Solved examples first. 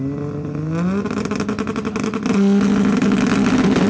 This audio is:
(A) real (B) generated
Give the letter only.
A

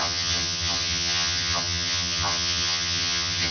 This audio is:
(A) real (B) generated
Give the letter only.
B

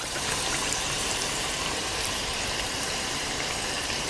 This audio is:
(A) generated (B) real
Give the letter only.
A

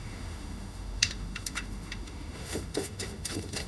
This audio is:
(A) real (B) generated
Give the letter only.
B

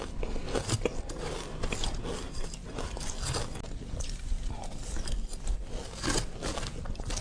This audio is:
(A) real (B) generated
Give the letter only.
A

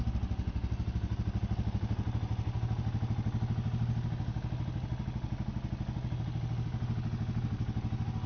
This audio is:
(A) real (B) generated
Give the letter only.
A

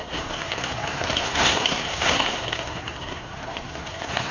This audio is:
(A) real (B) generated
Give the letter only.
B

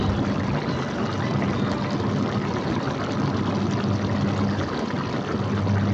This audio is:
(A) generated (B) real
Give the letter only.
B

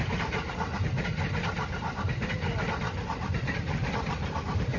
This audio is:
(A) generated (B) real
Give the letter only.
B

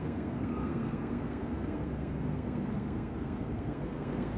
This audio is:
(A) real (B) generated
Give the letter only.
B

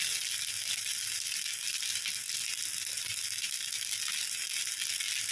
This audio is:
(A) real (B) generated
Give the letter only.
A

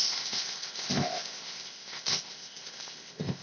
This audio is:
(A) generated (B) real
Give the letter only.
A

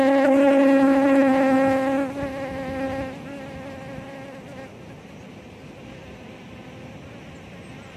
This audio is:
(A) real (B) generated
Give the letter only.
A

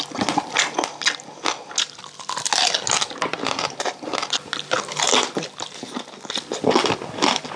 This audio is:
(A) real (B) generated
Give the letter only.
A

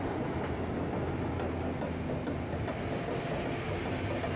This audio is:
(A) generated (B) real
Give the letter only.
B